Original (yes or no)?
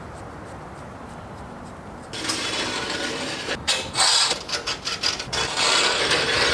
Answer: no